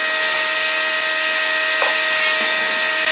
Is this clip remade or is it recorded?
recorded